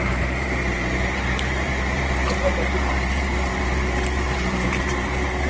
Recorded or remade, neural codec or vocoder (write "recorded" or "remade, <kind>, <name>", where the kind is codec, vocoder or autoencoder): remade, vocoder, BigVGAN v2